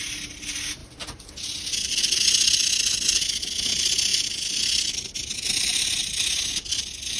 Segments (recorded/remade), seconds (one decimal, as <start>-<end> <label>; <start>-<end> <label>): 0.0-7.2 recorded

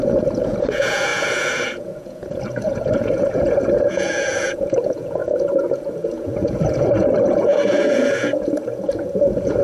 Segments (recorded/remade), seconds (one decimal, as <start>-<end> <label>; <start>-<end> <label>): 0.0-9.6 remade